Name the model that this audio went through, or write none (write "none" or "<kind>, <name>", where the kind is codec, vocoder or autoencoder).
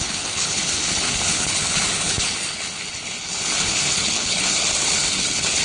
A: codec, HILCodec